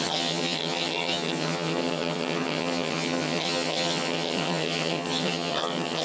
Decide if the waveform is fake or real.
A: fake